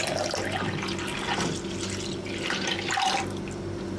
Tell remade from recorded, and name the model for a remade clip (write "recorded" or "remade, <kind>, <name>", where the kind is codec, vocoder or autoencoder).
recorded